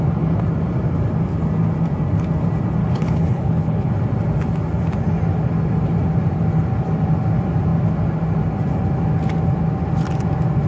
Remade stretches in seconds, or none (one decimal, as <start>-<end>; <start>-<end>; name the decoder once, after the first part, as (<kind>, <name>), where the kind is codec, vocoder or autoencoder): 2.8-3.9 (codec, HILCodec)

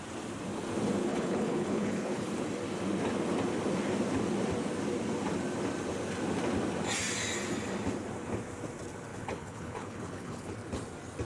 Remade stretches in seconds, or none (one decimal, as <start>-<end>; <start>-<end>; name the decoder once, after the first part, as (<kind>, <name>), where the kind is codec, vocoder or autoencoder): 1.1-2.3 (codec, HILCodec); 9.1-10.5

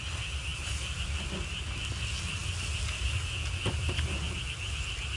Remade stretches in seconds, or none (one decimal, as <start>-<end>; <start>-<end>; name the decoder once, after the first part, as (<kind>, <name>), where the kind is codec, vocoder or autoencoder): none

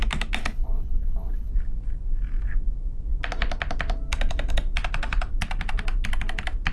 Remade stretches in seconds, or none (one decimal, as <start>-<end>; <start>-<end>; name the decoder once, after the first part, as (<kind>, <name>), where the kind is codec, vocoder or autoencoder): 0.4-1.5 (codec, HILCodec)

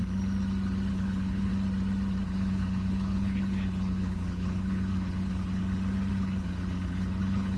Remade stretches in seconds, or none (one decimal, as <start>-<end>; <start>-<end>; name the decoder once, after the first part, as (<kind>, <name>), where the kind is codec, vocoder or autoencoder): 0.9-1.5 (codec, HILCodec); 2.2-5.6; 6.1-7.6